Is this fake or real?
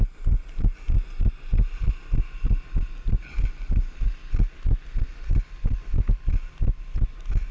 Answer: real